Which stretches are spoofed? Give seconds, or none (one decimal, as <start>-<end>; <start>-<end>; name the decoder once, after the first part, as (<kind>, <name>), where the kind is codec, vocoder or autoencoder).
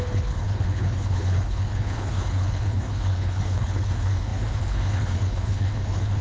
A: 0.0-6.2 (codec, HILCodec)